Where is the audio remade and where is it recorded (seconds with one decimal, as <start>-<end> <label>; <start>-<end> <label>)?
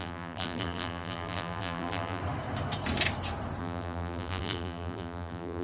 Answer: 0.0-2.2 remade; 2.2-3.6 recorded; 3.6-5.6 remade